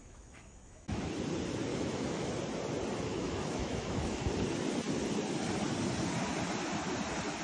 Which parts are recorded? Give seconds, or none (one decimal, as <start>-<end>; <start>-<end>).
1.1-1.7; 2.3-3.1; 4.3-7.4